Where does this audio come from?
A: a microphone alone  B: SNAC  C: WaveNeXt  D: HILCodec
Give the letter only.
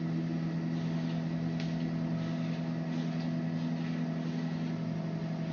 A